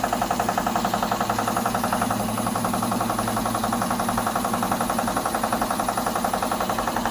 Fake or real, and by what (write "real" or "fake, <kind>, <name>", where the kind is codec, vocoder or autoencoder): real